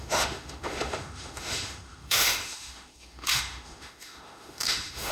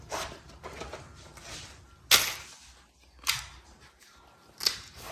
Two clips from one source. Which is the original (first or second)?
second